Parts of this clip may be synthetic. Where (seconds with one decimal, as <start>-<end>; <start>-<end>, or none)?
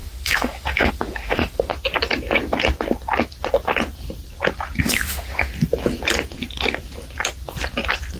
0.0-1.7; 4.8-5.5